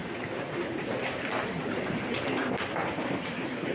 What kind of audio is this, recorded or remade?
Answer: remade